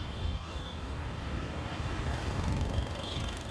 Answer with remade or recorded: remade